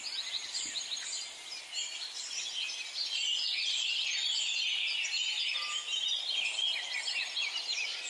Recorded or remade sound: recorded